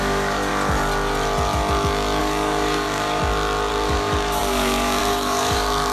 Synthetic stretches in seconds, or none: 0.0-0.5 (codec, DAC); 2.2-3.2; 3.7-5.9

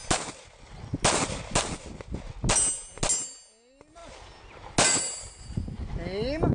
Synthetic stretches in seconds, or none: none

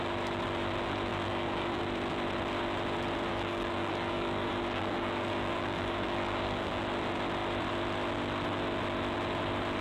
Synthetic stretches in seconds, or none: 1.1-1.8 (codec, DAC); 3.3-6.8